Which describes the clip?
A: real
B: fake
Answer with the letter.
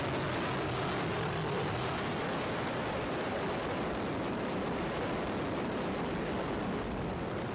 A